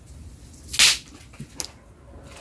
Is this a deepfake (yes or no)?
no